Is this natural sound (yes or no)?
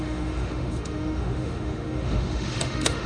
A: no